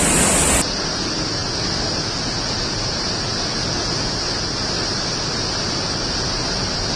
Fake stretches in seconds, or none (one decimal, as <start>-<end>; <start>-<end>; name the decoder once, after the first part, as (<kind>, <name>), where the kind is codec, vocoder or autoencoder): none